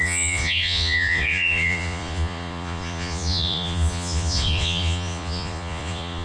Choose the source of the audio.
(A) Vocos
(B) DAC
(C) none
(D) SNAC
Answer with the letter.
A